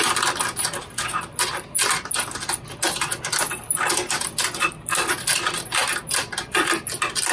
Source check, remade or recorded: recorded